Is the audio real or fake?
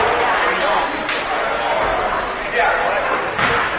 real